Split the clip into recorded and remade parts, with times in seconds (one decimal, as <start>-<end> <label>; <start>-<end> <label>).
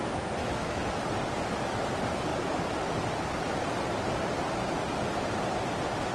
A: 0.0-0.4 recorded; 0.4-0.9 remade; 0.9-6.1 recorded